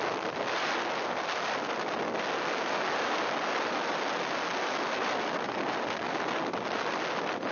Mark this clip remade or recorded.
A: recorded